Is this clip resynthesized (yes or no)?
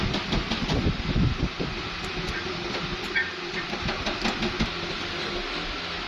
no